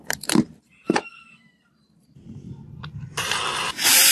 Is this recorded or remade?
remade